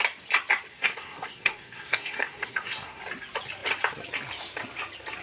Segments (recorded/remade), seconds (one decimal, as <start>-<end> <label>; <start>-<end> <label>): 0.0-0.7 recorded; 0.7-3.0 remade; 3.0-5.2 recorded